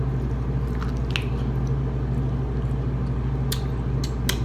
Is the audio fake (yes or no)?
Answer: no